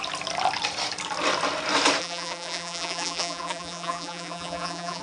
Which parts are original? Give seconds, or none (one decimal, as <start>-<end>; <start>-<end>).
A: 0.0-2.0